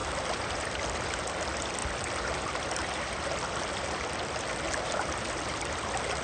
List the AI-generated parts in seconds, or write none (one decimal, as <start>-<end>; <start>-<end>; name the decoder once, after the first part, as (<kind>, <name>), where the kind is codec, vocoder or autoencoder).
0.0-1.8 (vocoder, BigVGAN v2); 4.5-6.2